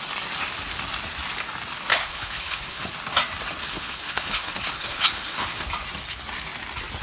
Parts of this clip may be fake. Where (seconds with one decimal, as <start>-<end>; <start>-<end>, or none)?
1.9-2.9; 3.6-5.6